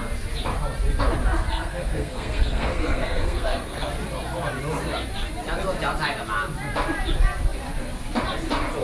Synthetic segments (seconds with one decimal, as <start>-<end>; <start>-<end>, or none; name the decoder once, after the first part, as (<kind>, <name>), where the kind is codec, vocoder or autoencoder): 1.5-3.9 (codec, SNAC)